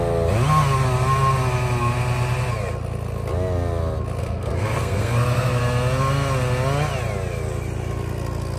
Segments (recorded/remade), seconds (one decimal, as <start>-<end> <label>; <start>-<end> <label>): 0.0-4.2 recorded; 4.2-5.6 remade; 5.6-8.6 recorded